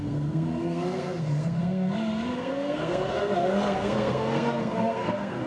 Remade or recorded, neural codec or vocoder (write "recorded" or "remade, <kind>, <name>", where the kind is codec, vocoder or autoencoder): remade, codec, SNAC